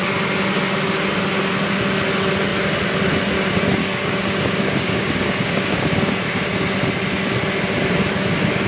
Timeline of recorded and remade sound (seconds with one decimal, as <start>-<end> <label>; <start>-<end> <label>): 0.0-3.8 recorded; 3.8-6.1 remade; 6.1-8.7 recorded